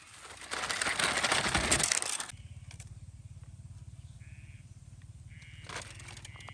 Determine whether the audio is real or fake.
real